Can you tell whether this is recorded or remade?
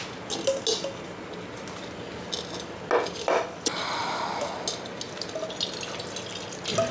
recorded